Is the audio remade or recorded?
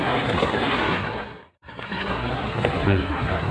remade